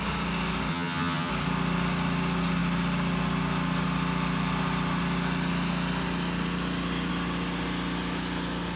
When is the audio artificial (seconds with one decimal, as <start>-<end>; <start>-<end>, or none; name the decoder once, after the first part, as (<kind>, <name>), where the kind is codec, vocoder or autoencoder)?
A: 0.7-1.3 (vocoder, HiFi-GAN)

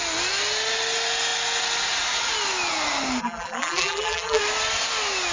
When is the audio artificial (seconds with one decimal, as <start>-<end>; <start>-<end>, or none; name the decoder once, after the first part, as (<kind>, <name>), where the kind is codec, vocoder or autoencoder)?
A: 3.2-4.4 (vocoder, BigVGAN v2)

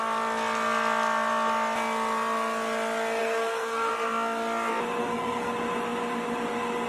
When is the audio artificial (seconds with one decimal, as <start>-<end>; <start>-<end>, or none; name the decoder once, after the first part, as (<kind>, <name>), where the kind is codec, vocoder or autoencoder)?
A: 3.2-3.9 (codec, SNAC); 5.0-5.5

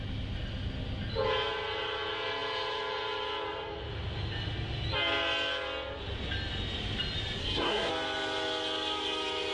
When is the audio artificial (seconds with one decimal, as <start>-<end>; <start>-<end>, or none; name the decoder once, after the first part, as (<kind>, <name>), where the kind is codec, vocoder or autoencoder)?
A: 7.4-7.9 (codec, SNAC)